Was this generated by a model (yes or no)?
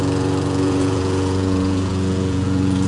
yes